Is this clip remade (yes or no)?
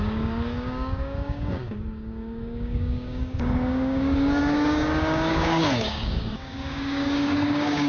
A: yes